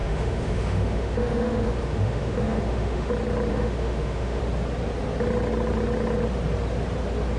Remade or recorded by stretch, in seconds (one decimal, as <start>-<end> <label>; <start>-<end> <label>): 0.0-3.1 remade; 3.1-3.5 recorded; 3.5-4.4 remade; 4.4-7.4 recorded